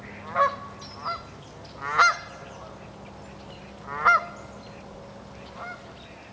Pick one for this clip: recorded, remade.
recorded